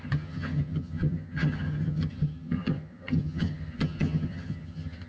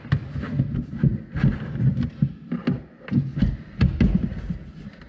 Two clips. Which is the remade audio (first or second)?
first